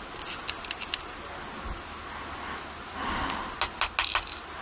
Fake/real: real